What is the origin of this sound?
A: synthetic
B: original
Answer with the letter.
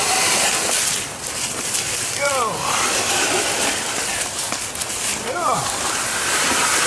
A